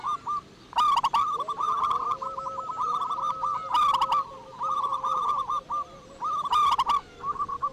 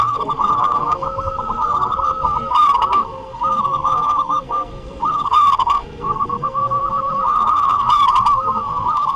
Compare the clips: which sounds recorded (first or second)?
first